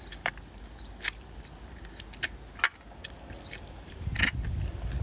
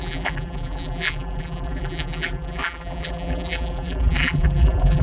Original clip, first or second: first